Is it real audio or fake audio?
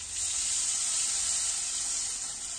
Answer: real